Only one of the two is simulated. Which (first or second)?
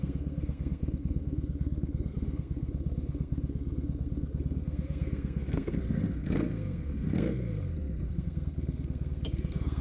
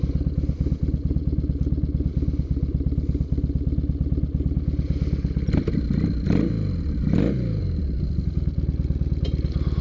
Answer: first